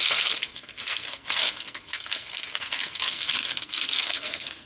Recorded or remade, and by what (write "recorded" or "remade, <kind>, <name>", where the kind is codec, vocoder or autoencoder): remade, codec, SNAC